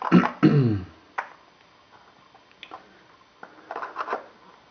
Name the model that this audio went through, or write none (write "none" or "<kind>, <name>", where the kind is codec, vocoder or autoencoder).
none